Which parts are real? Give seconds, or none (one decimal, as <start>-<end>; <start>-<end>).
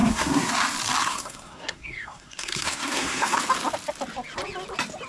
0.5-1.0; 3.4-5.1